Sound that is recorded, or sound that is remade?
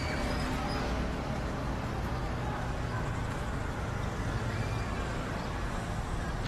recorded